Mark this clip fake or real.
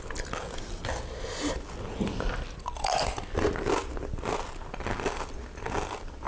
real